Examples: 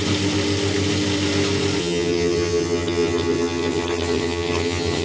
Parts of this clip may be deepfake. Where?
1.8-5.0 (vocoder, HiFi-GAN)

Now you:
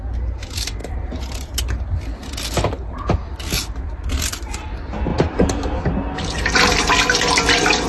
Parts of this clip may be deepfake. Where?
0.8-2.0 (vocoder, BigVGAN v2); 5.1-5.8

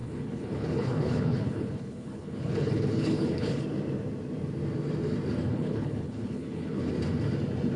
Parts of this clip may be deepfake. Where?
0.0-3.6 (codec, HILCodec); 5.5-6.9